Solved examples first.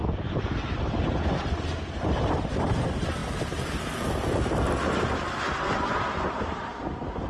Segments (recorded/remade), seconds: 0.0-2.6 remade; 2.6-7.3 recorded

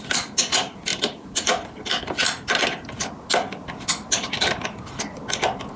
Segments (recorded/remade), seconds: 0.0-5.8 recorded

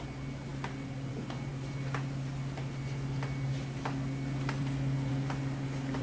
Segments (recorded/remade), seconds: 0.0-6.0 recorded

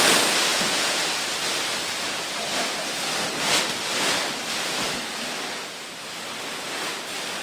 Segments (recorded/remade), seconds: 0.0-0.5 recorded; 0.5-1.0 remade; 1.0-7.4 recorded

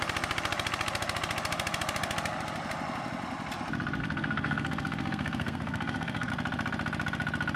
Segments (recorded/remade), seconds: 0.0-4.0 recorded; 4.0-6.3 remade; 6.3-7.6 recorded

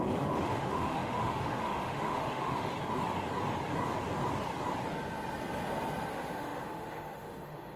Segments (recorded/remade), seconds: 0.0-2.7 remade; 2.7-6.1 recorded; 6.1-7.8 remade

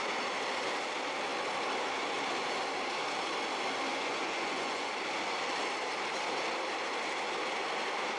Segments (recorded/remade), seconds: 0.0-3.9 recorded; 3.9-4.9 remade; 4.9-8.2 recorded

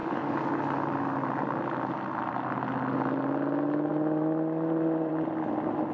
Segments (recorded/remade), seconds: 0.0-0.6 remade; 0.6-5.9 recorded